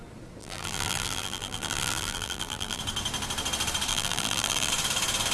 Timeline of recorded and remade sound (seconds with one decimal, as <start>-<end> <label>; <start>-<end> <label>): 0.0-0.4 recorded; 0.4-2.8 remade; 2.8-3.9 recorded; 3.9-4.7 remade; 4.7-5.3 recorded